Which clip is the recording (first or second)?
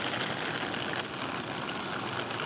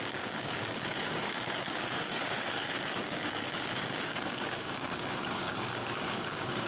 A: first